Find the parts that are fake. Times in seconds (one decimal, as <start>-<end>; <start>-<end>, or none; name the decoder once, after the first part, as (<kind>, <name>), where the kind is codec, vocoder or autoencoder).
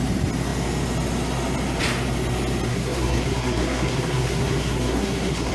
2.7-5.5 (codec, SNAC)